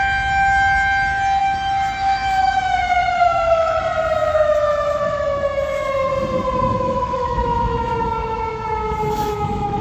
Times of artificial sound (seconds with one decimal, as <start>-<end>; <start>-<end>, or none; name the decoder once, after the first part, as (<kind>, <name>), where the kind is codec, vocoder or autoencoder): 1.4-3.8 (autoencoder, DAC-VAE); 4.2-6.1; 6.7-9.8